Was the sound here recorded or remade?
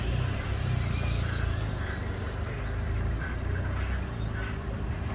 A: recorded